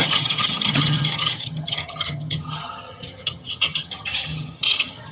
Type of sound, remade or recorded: remade